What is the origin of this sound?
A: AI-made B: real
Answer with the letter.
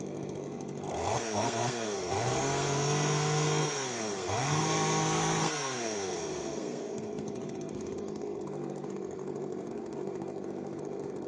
A